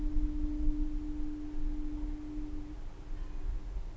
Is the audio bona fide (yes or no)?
yes